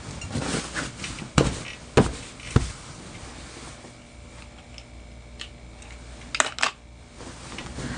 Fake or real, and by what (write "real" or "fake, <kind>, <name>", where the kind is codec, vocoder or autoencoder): real